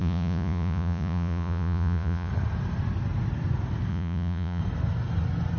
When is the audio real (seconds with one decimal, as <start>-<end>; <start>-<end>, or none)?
2.3-3.9; 4.6-5.6

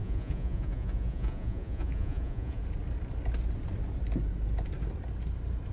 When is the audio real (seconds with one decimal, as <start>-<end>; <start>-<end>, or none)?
2.6-5.7

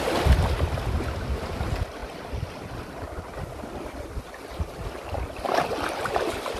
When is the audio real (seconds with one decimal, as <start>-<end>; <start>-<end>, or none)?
0.0-6.6

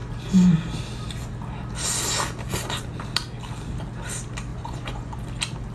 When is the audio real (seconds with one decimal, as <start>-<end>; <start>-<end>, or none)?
0.0-4.5; 5.2-5.7

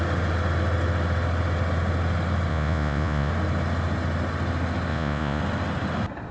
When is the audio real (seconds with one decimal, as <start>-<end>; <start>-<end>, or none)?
0.0-2.5; 3.3-4.9; 5.4-6.3